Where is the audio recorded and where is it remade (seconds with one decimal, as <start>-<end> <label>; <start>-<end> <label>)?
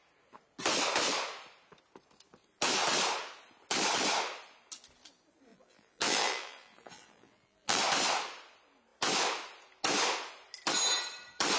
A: 0.0-5.5 recorded; 5.5-7.8 remade; 7.8-11.6 recorded